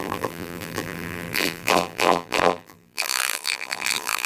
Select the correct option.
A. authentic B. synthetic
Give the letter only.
B